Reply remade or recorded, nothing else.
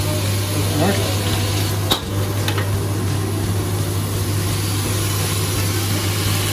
recorded